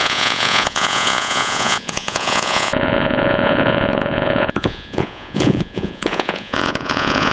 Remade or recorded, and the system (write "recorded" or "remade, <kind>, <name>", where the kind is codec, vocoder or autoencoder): remade, vocoder, Vocos